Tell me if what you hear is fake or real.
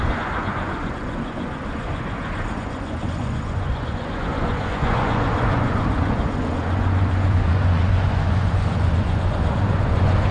fake